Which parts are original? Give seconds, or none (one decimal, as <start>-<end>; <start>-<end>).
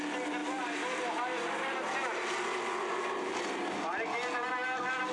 0.0-0.4; 1.0-5.1